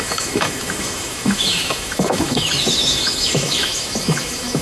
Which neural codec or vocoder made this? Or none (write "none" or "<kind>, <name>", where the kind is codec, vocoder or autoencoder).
autoencoder, DAC-VAE